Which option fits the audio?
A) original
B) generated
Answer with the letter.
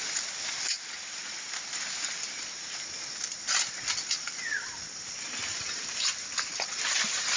A